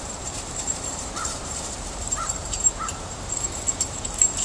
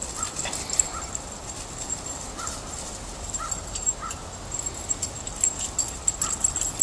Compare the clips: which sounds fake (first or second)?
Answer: first